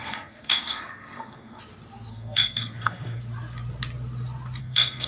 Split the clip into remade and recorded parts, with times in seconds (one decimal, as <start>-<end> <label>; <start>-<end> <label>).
0.0-1.6 remade; 1.6-2.1 recorded; 2.1-3.2 remade; 3.2-4.6 recorded; 4.6-5.1 remade